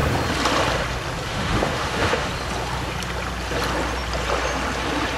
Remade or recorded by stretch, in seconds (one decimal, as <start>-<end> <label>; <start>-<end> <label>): 0.0-1.3 recorded; 1.3-2.3 remade; 2.3-5.2 recorded